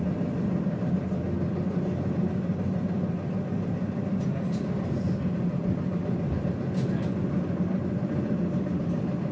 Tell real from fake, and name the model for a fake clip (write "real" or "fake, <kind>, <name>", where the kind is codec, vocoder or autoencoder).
real